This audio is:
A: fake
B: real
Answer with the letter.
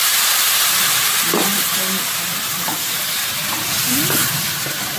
A